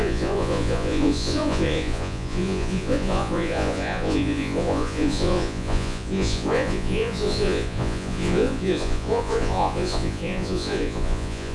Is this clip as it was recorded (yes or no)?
no